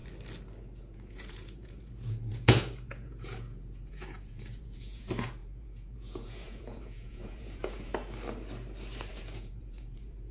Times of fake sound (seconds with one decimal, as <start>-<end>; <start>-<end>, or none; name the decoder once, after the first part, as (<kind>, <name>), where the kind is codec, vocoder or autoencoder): 0.8-7.9 (vocoder, Vocos); 9.1-10.3